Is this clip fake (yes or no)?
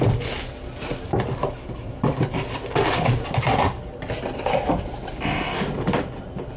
no